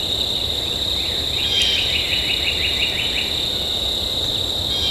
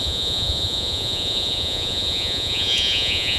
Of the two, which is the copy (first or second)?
second